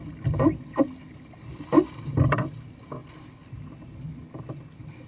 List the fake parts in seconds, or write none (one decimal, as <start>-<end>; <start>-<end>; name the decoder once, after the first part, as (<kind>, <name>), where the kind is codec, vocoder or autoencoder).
none